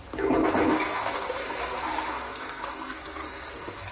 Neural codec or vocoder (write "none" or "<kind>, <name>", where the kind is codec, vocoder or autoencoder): codec, SNAC